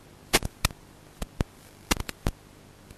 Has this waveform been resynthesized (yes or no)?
no